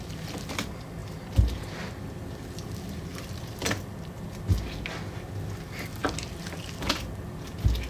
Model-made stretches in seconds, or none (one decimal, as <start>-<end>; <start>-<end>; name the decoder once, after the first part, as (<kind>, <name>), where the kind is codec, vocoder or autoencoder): none